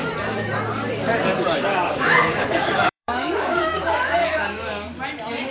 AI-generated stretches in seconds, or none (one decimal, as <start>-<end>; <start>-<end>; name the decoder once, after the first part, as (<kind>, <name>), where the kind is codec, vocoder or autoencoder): 1.7-5.0 (codec, DAC)